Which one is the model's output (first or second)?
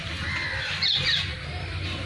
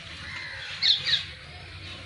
second